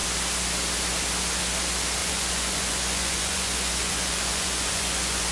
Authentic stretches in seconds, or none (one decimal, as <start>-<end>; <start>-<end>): 0.0-2.0